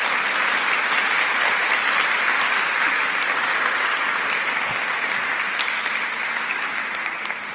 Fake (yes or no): no